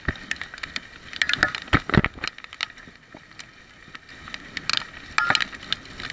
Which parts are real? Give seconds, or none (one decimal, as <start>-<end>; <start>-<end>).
0.0-6.1

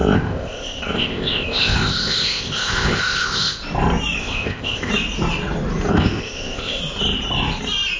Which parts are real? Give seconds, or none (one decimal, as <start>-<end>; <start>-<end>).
3.6-4.2; 4.9-5.9; 6.8-8.0